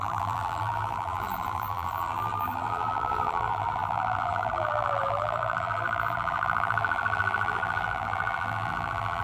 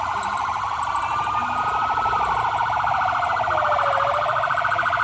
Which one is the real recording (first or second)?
second